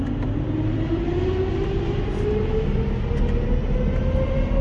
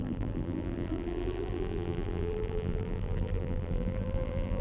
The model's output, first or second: second